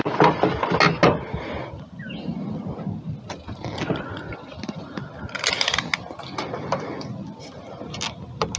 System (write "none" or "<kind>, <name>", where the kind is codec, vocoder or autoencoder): none